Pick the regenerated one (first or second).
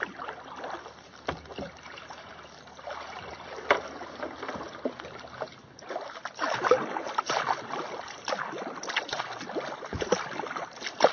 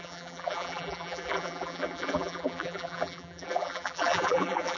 second